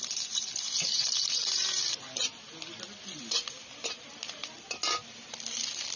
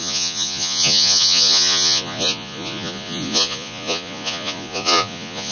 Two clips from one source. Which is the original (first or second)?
first